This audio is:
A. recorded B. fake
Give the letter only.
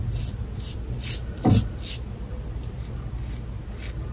A